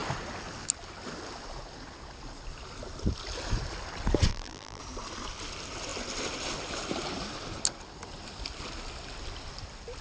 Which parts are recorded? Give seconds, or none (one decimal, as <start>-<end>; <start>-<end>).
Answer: 0.0-4.3; 4.8-10.0